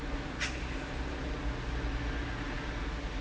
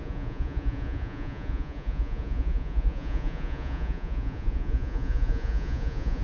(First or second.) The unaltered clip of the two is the first